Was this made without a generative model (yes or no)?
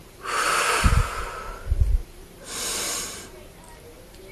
yes